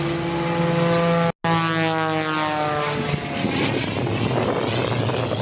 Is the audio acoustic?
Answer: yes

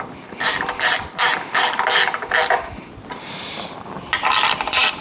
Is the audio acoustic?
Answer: yes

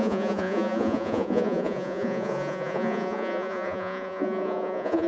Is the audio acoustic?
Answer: no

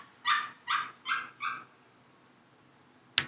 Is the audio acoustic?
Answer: yes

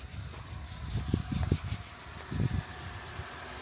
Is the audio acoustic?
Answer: yes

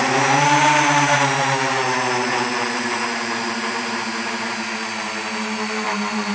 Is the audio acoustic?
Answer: no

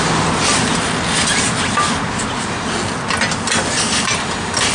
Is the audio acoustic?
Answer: yes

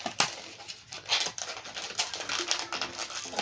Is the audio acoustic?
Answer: yes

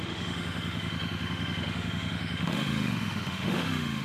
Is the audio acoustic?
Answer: no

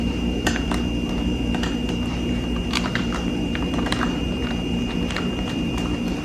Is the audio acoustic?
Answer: no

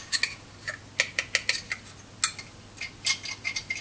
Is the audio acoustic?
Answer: yes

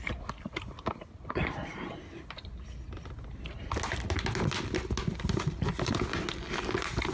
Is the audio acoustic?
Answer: yes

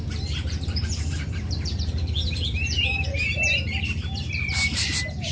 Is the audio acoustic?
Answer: no